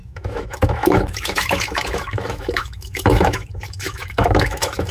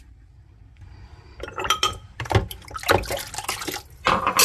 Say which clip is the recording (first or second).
second